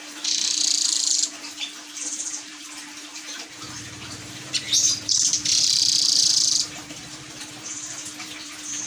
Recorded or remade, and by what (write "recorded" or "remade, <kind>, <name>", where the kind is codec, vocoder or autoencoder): remade, vocoder, BigVGAN v2